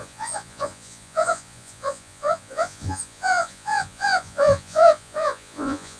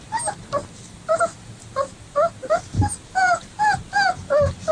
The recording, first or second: second